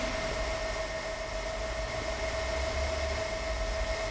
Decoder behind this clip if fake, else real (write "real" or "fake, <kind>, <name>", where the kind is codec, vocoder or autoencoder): real